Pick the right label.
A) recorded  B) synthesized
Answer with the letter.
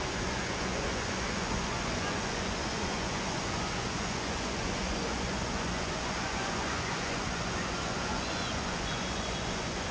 B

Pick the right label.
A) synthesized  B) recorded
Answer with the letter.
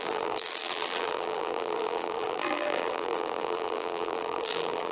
A